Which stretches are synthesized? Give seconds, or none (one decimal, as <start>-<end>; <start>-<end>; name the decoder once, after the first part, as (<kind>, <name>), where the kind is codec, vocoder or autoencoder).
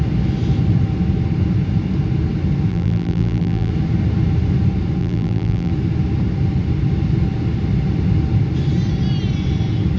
2.7-3.7 (vocoder, BigVGAN v2); 5.0-5.7